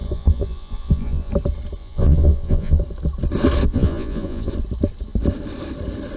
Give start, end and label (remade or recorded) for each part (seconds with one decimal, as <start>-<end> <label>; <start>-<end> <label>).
0.0-1.3 remade; 1.3-1.8 recorded; 1.8-2.8 remade; 2.8-3.7 recorded; 3.7-4.5 remade; 4.5-6.2 recorded